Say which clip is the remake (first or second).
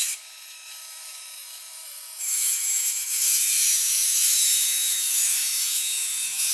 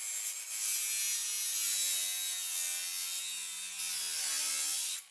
first